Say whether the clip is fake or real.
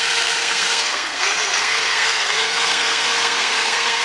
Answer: fake